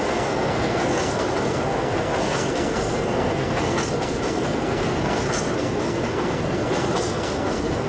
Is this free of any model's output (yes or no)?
no